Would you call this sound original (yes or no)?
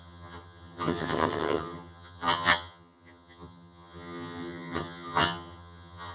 no